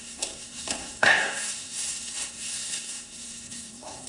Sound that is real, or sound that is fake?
fake